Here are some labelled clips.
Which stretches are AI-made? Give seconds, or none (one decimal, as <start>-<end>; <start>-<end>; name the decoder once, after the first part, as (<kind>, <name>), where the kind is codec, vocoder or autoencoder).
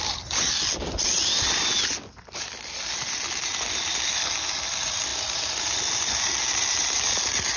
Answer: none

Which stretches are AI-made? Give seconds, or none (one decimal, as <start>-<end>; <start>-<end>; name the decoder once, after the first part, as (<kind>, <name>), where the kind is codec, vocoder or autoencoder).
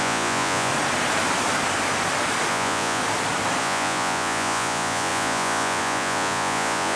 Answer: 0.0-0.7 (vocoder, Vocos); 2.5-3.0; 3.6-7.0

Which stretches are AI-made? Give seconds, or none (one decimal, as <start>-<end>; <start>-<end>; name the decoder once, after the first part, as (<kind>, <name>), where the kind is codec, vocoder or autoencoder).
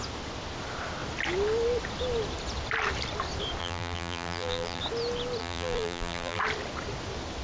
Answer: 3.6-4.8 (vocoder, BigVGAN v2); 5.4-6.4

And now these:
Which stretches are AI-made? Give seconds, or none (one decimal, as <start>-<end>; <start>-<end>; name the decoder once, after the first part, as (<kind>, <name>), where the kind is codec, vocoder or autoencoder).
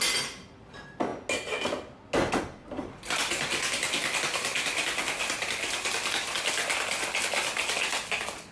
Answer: none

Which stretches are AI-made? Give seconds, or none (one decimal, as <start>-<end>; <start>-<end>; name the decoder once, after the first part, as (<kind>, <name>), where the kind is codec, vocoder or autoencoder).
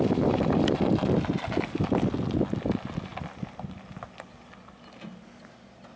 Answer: none